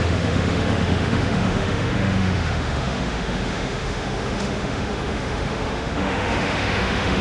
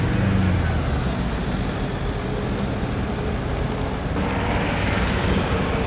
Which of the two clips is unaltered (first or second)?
second